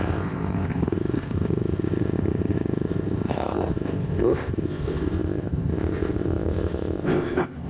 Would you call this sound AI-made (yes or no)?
yes